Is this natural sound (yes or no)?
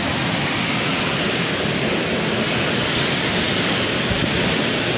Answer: yes